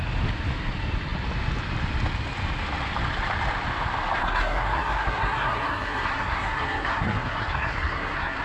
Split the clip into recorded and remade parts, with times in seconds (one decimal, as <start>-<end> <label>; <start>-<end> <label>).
0.0-4.2 recorded; 4.2-8.4 remade